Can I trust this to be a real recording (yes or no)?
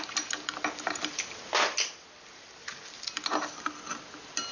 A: yes